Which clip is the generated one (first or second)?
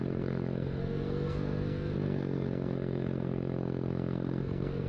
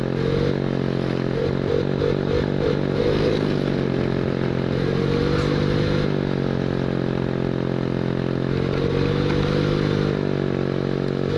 first